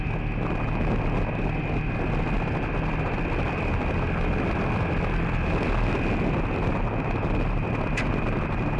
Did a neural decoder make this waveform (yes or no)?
no